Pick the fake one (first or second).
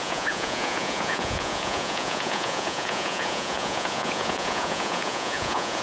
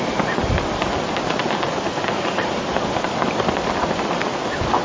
first